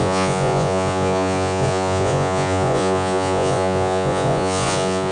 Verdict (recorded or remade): remade